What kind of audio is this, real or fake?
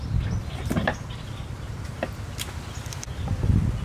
real